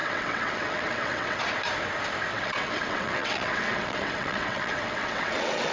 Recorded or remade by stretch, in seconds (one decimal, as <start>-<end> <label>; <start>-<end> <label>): 0.0-1.4 remade; 1.4-2.3 recorded; 2.3-5.7 remade